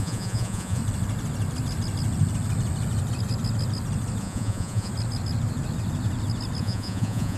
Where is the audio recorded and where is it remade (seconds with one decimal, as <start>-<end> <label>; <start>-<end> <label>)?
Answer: 0.0-0.8 remade; 0.8-4.2 recorded; 4.2-4.9 remade; 4.9-6.6 recorded; 6.6-7.4 remade

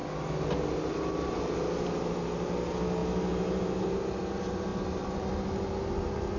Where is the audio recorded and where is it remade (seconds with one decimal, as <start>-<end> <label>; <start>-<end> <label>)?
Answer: 0.0-6.4 recorded

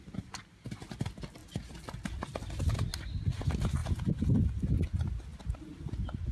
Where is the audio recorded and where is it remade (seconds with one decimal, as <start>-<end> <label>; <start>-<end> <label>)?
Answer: 0.0-2.9 recorded; 2.9-3.4 remade; 3.4-6.3 recorded

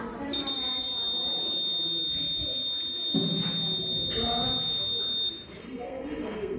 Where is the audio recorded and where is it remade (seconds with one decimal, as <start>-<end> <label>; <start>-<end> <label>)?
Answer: 0.0-5.6 recorded; 5.6-6.6 remade

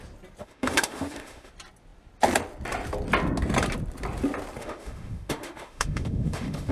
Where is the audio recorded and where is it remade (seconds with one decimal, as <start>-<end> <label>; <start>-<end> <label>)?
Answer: 0.0-0.4 recorded; 0.4-1.5 remade; 1.5-4.6 recorded; 4.6-6.7 remade

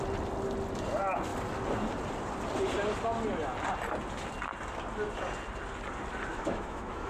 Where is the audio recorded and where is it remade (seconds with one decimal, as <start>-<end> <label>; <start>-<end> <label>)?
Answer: 0.0-6.3 recorded; 6.3-7.1 remade

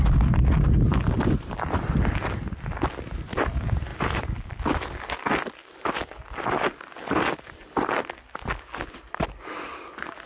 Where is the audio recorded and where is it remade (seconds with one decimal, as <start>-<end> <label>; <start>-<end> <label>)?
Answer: 0.0-10.3 recorded

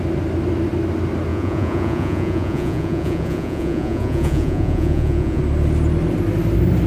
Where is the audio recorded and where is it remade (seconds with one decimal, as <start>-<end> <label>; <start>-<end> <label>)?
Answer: 0.0-1.3 recorded; 1.3-5.4 remade; 5.4-6.9 recorded